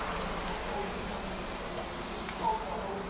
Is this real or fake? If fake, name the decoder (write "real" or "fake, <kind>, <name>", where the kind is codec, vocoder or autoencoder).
real